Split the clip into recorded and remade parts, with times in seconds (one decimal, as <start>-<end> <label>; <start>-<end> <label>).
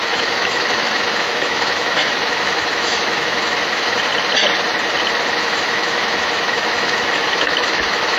0.0-4.1 remade; 4.1-5.3 recorded; 5.3-8.2 remade